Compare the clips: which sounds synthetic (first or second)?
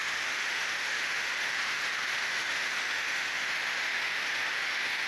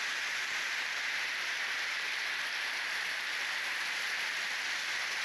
first